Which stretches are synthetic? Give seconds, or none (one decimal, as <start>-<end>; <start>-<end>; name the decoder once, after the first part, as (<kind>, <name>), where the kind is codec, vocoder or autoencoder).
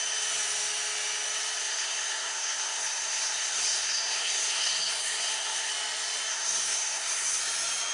1.6-5.7 (codec, SNAC); 6.3-7.4